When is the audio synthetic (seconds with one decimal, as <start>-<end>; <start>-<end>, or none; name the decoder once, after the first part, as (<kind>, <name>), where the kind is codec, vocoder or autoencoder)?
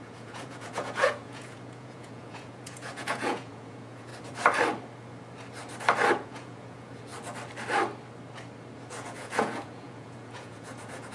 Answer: 0.0-4.1 (vocoder, Vocos); 6.1-7.1; 8.9-11.1